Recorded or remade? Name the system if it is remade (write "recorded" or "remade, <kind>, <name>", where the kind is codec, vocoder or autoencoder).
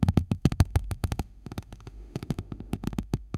remade, autoencoder, DAC-VAE